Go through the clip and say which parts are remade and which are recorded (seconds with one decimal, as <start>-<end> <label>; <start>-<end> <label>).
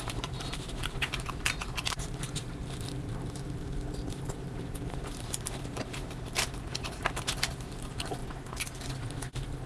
0.0-8.2 remade; 8.2-9.7 recorded